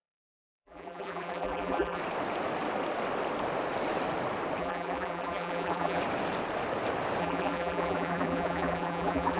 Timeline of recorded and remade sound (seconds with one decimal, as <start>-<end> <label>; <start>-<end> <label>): 0.0-2.0 remade; 2.0-4.6 recorded; 4.6-6.0 remade; 6.0-7.2 recorded; 7.2-9.4 remade